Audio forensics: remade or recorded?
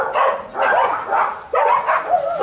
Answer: recorded